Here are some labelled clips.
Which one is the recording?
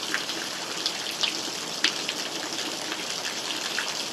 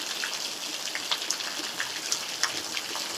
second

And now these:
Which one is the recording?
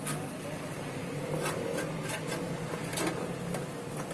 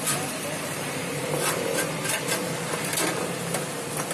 first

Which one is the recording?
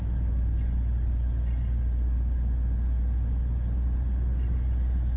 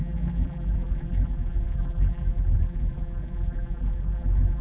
first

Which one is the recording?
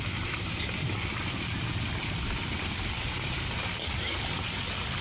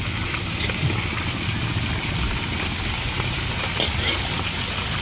second